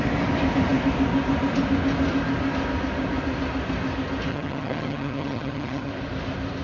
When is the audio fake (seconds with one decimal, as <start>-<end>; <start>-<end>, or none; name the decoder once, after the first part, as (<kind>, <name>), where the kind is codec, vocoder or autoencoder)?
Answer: 4.3-5.9 (vocoder, HiFi-GAN)